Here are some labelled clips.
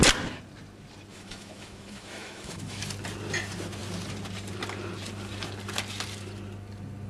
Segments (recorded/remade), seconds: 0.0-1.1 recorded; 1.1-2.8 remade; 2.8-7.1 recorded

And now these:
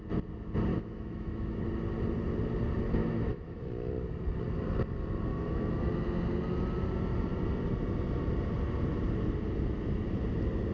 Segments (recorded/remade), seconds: 0.0-0.7 recorded; 0.7-1.6 remade; 1.6-3.0 recorded; 3.0-3.9 remade; 3.9-5.3 recorded; 5.3-5.9 remade; 5.9-10.7 recorded

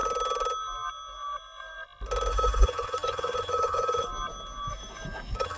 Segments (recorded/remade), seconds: 0.0-2.3 recorded; 2.3-4.1 remade; 4.1-4.7 recorded; 4.7-5.6 remade

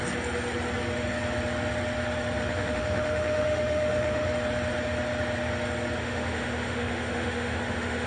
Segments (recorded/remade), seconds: 0.0-2.4 recorded; 2.4-4.3 remade; 4.3-6.0 recorded; 6.0-8.1 remade

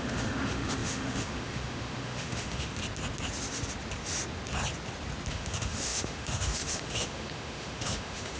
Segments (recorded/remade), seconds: 0.0-2.8 remade; 2.8-5.3 recorded; 5.3-8.4 remade